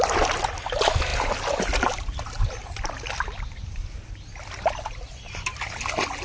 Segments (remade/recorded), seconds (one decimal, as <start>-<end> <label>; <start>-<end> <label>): 0.0-6.2 recorded

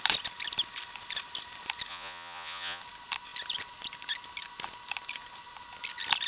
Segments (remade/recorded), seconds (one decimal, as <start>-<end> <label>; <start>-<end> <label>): 0.0-1.9 recorded; 1.9-2.8 remade; 2.8-6.3 recorded

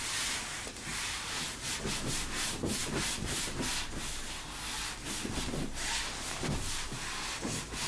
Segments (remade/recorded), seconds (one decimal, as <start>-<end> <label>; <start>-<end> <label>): 0.0-7.9 recorded

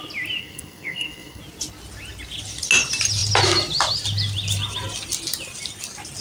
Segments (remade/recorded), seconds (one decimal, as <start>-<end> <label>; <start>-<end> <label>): 0.0-0.4 recorded; 0.4-1.4 remade; 1.4-6.2 recorded

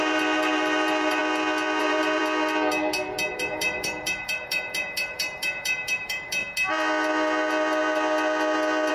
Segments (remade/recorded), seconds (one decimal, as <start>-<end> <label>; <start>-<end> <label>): 0.0-1.2 remade; 1.2-1.8 recorded; 1.8-2.2 remade; 2.2-3.3 recorded; 3.3-6.4 remade; 6.4-8.9 recorded